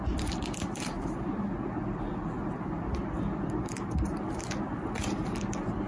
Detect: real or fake real